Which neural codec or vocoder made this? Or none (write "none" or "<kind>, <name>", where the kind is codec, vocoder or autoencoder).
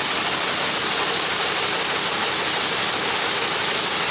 none